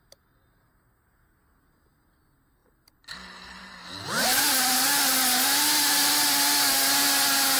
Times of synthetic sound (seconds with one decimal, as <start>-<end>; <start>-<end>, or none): none